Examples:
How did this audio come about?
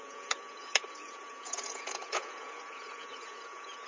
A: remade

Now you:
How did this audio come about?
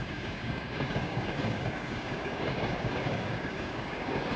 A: remade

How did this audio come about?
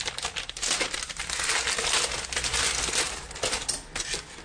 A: recorded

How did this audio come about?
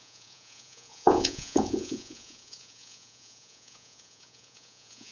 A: remade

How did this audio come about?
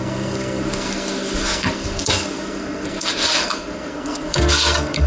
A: remade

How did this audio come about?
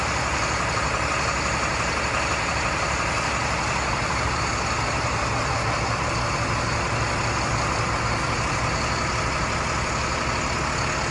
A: recorded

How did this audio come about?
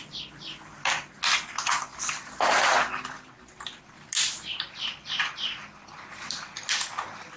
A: recorded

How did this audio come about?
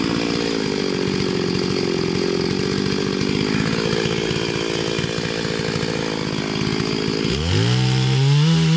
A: recorded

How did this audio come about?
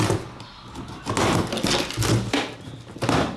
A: recorded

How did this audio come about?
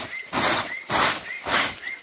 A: recorded